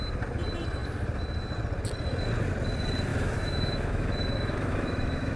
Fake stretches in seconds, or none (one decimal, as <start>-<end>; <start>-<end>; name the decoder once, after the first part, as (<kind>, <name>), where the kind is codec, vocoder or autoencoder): 3.1-5.4 (autoencoder, DAC-VAE)